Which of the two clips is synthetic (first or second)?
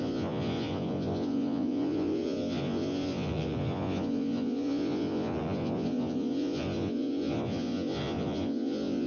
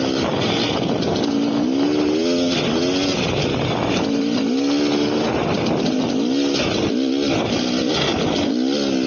first